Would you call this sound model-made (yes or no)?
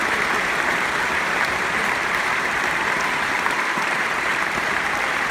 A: yes